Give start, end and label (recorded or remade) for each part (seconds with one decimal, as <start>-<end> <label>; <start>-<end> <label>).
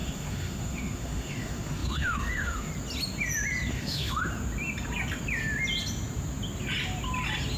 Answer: 0.0-2.7 remade; 2.7-3.7 recorded; 3.7-4.2 remade; 4.2-7.6 recorded